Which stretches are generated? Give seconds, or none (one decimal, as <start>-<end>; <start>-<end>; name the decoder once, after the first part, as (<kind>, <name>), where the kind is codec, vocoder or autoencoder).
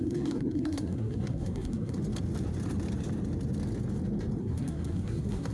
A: 0.0-2.0 (codec, SNAC); 4.4-5.5